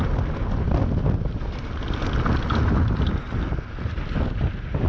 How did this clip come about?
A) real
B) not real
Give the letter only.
A